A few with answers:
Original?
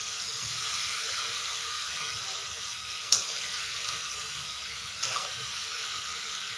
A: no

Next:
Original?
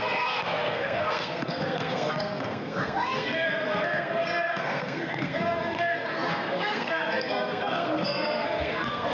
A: no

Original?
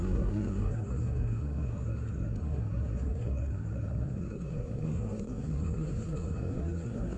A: no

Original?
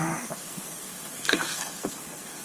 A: no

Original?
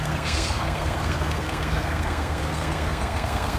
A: no